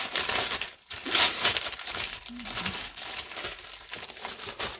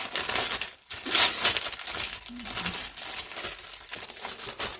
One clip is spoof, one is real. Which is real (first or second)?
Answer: second